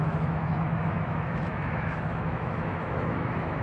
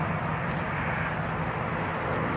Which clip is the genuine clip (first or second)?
second